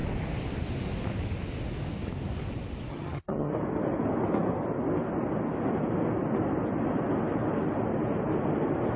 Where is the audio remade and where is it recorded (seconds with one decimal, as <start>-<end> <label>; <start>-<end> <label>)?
0.0-2.9 recorded; 2.9-3.5 remade; 3.5-9.0 recorded